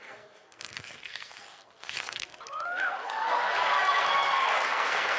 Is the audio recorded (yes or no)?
no